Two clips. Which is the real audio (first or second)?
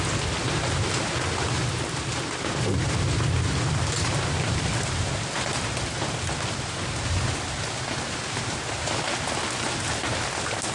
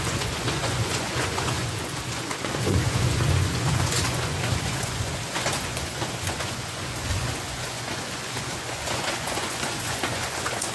first